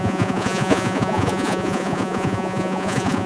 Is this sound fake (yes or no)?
yes